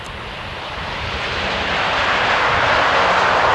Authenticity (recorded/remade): recorded